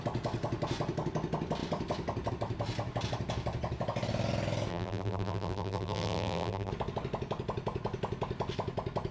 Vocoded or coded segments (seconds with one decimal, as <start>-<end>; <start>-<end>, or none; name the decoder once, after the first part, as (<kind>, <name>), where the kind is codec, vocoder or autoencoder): 4.7-6.7 (vocoder, BigVGAN v2)